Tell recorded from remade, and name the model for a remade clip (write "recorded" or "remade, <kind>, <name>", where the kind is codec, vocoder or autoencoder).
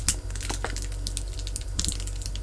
recorded